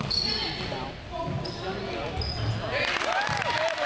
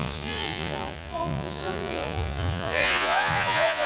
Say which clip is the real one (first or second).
first